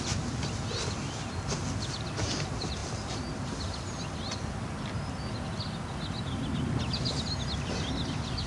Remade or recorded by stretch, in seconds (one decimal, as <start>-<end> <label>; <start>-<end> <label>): 0.0-8.5 recorded